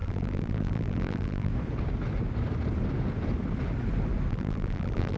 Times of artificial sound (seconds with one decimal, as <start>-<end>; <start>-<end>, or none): 0.0-1.5; 4.3-5.2